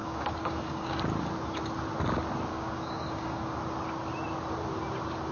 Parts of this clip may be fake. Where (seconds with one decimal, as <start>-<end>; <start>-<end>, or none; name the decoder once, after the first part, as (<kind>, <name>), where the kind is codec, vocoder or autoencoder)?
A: 0.0-1.0 (codec, DAC); 2.5-3.6